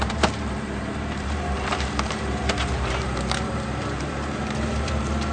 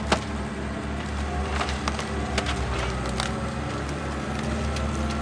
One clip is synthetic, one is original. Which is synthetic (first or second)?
first